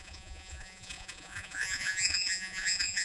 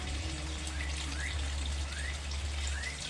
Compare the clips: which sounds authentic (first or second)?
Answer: second